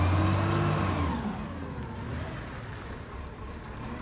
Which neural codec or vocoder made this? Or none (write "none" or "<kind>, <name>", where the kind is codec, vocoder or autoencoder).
none